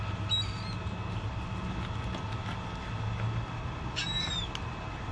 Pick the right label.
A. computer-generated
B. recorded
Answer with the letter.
B